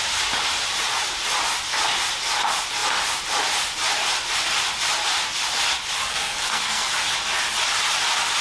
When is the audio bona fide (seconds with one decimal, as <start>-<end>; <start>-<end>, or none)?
0.0-6.1; 6.9-8.4